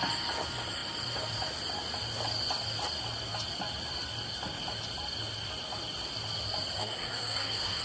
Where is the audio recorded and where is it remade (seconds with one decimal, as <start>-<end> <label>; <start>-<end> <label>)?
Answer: 0.0-6.8 recorded; 6.8-7.8 remade

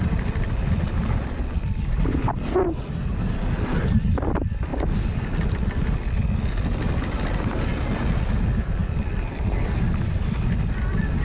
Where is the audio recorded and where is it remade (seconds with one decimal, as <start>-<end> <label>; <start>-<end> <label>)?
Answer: 0.0-11.2 recorded

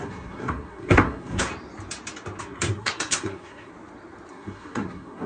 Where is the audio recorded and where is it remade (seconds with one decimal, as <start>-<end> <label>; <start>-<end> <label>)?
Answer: 0.0-1.5 remade; 1.5-2.4 recorded; 2.4-3.7 remade; 3.7-4.3 recorded; 4.3-5.3 remade

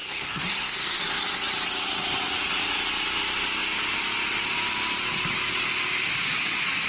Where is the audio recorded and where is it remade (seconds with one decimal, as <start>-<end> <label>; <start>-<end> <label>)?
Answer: 0.0-1.0 remade; 1.0-6.9 recorded

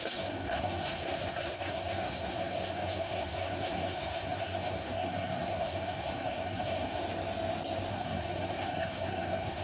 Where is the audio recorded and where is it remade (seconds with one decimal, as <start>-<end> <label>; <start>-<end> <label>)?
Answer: 0.0-7.0 remade; 7.0-7.9 recorded; 7.9-9.6 remade